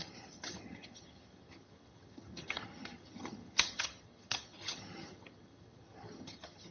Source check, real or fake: fake